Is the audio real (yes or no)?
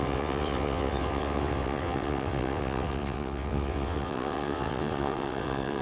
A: no